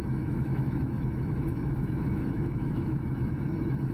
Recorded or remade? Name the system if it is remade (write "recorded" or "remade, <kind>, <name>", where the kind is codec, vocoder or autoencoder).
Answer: remade, autoencoder, DAC-VAE